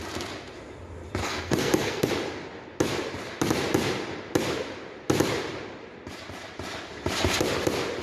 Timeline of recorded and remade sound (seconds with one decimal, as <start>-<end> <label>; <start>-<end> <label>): 0.0-1.2 recorded; 1.2-2.1 remade; 2.1-8.0 recorded